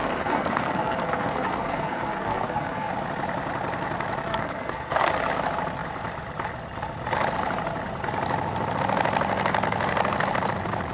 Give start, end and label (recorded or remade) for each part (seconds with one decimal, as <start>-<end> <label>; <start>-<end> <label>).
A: 0.0-2.9 remade; 2.9-4.3 recorded; 4.3-5.1 remade; 5.1-10.9 recorded